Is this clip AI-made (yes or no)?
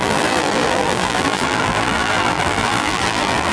yes